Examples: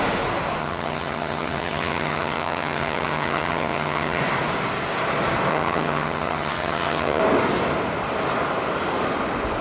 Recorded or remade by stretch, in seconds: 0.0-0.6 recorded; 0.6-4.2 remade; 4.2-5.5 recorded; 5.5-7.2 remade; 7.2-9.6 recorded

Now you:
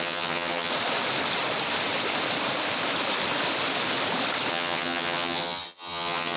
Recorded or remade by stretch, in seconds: 0.0-0.7 remade; 0.7-4.5 recorded; 4.5-6.4 remade

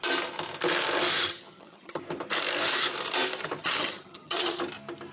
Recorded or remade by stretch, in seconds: 0.0-1.3 recorded; 1.3-2.0 remade; 2.0-3.6 recorded; 3.6-4.6 remade; 4.6-5.1 recorded

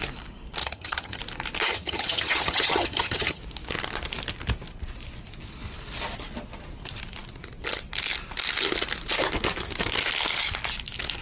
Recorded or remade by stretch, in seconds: 0.0-0.6 recorded; 0.6-1.2 remade; 1.2-1.7 recorded; 1.7-3.4 remade; 3.4-11.2 recorded

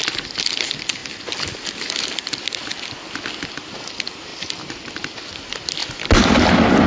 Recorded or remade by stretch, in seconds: 0.0-6.9 recorded

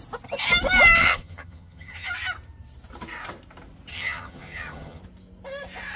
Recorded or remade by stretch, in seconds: 0.0-1.0 recorded; 1.0-2.1 remade; 2.1-3.9 recorded; 3.9-5.0 remade; 5.0-6.0 recorded

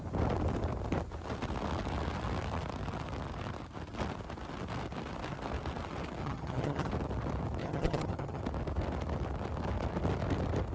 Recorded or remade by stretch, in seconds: 0.0-6.2 recorded; 6.2-6.9 remade; 6.9-7.6 recorded; 7.6-8.4 remade; 8.4-10.7 recorded

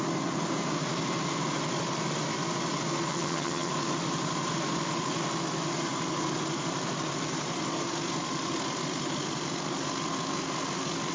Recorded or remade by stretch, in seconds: 0.0-3.1 recorded; 3.1-3.7 remade; 3.7-11.1 recorded